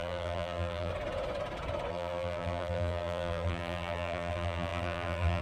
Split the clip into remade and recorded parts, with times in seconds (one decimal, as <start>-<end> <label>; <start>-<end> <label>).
0.0-0.9 remade; 0.9-1.9 recorded; 1.9-5.4 remade